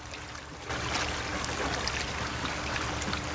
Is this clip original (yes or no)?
yes